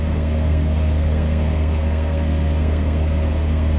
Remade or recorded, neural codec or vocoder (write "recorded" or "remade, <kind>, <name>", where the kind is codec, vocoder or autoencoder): remade, codec, SNAC